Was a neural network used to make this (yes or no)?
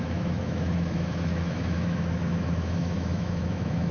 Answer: yes